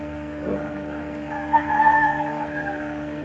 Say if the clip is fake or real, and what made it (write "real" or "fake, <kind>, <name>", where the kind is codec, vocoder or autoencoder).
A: fake, codec, SNAC